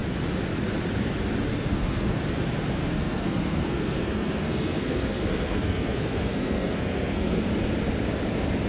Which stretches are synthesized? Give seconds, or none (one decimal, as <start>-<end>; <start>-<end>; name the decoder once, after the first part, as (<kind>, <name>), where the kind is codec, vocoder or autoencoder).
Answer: 1.5-2.2 (codec, SNAC); 2.8-7.4